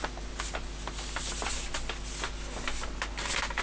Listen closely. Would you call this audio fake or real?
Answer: real